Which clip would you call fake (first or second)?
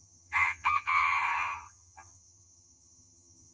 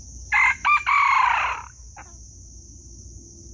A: first